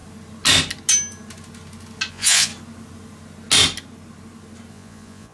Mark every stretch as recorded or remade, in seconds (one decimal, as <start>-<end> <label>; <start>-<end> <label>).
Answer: 0.0-2.1 recorded; 2.1-2.5 remade; 2.5-4.7 recorded; 4.7-5.3 remade